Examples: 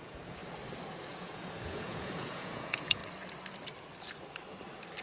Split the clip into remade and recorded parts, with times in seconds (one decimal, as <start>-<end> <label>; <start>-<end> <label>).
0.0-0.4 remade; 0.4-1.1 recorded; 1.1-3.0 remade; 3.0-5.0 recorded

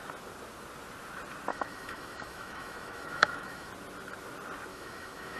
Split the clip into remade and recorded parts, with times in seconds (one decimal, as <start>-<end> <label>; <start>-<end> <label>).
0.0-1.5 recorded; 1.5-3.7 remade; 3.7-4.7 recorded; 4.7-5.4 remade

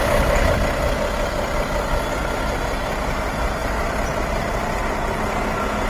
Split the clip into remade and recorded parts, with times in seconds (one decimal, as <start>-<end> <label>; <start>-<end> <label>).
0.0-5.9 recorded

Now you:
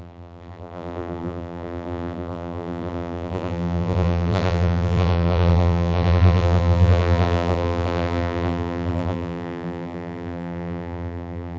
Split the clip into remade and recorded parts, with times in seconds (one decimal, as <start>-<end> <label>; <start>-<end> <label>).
0.0-11.6 remade

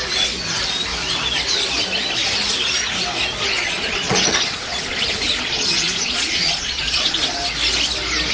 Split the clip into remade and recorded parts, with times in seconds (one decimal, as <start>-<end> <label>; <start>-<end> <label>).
0.0-3.5 recorded; 3.5-7.2 remade; 7.2-8.3 recorded

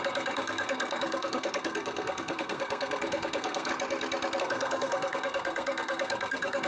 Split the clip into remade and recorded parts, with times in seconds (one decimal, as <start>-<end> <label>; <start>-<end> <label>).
0.0-3.7 remade; 3.7-4.4 recorded; 4.4-6.7 remade